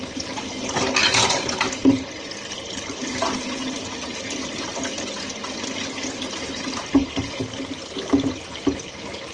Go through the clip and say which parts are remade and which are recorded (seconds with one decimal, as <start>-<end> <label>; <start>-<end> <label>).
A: 0.0-9.3 recorded